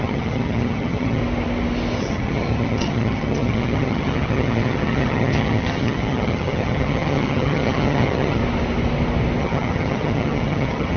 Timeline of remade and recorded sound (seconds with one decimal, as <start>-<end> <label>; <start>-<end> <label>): 0.0-1.2 remade; 1.2-2.0 recorded; 2.0-8.4 remade; 8.4-9.4 recorded; 9.4-11.0 remade